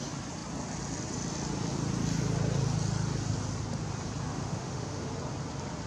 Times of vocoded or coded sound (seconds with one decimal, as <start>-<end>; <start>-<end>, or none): 4.3-5.1